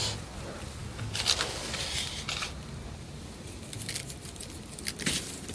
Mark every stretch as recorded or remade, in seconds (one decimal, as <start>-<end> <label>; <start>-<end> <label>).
0.0-0.8 recorded; 0.8-1.8 remade; 1.8-5.5 recorded